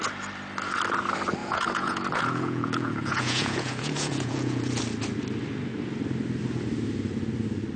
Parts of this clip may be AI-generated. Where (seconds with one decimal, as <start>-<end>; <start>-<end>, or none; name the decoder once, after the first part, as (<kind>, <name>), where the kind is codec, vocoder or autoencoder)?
1.4-4.8 (vocoder, Vocos)